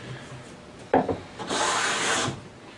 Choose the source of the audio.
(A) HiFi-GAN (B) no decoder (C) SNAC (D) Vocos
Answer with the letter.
B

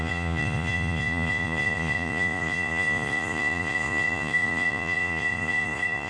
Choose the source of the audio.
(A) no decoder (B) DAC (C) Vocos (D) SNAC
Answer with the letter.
C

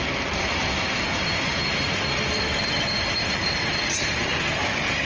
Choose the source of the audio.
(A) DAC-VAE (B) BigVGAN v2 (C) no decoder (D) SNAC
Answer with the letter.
C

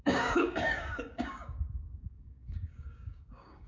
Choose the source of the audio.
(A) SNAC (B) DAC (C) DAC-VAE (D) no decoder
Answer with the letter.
B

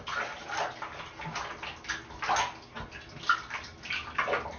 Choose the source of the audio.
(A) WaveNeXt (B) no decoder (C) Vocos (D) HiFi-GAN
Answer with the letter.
B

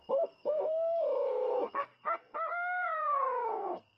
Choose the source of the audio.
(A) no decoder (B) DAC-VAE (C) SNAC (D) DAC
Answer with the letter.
C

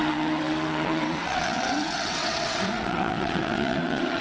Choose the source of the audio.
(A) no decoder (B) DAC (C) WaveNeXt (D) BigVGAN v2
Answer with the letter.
C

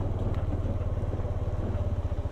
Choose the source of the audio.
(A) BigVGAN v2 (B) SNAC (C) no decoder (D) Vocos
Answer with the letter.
C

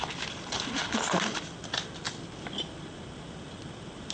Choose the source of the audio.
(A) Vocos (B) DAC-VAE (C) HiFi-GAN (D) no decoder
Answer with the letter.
D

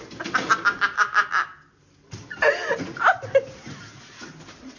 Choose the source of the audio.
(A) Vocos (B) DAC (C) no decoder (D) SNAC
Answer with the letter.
C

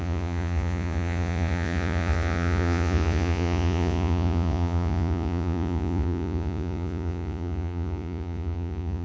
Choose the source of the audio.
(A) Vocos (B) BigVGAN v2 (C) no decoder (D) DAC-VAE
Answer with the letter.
A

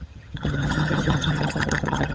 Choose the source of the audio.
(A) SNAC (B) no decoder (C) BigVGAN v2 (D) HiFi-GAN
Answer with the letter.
D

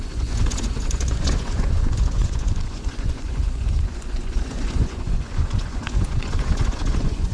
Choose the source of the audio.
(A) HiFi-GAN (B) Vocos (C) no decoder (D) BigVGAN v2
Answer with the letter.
B